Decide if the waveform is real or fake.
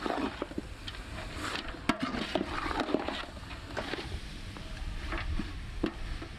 real